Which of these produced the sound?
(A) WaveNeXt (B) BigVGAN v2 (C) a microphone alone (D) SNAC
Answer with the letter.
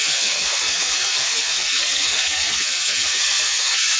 D